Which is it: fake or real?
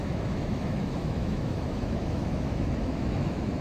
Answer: fake